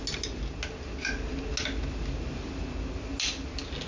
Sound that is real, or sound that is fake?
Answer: real